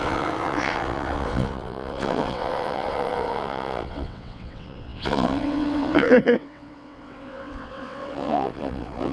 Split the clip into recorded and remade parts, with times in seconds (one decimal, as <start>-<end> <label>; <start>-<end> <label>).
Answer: 0.0-9.1 remade